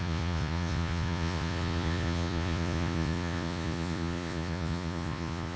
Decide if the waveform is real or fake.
fake